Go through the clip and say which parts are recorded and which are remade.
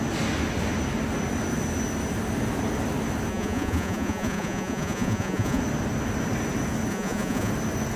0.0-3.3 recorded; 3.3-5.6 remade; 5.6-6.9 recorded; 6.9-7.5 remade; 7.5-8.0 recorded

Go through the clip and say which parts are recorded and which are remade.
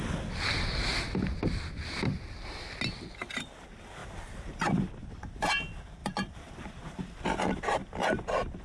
0.0-4.0 recorded; 4.0-5.4 remade; 5.4-6.0 recorded; 6.0-7.0 remade; 7.0-8.6 recorded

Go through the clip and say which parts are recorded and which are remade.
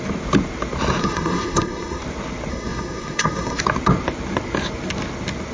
0.0-1.0 recorded; 1.0-2.0 remade; 2.0-2.5 recorded; 2.5-3.6 remade; 3.6-5.5 recorded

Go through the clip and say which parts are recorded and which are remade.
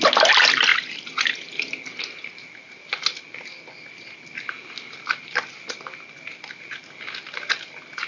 0.0-8.1 recorded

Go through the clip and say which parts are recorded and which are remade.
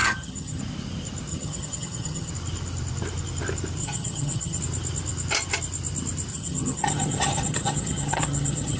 0.0-0.6 remade; 0.6-1.3 recorded; 1.3-2.3 remade; 2.3-3.8 recorded; 3.8-4.6 remade; 4.6-6.3 recorded; 6.3-8.8 remade